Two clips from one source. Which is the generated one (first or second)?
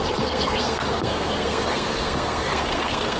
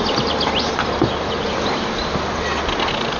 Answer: first